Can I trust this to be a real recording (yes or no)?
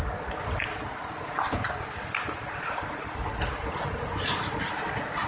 yes